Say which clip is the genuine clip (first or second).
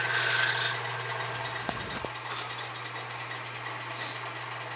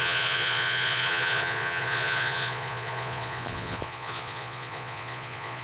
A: first